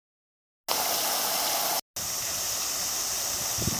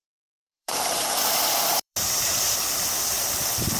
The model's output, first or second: second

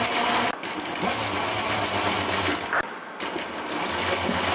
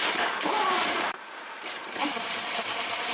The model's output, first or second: second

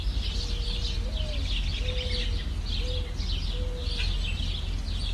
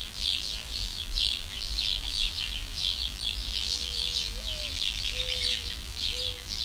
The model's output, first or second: second